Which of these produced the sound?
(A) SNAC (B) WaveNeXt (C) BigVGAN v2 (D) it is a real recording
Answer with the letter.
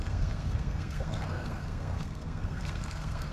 A